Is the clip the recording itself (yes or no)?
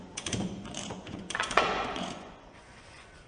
no